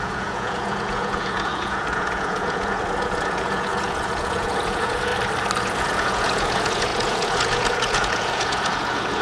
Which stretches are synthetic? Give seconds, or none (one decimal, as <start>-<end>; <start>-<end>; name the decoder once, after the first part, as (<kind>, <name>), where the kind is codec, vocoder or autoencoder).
0.0-5.1 (vocoder, Vocos); 5.6-9.2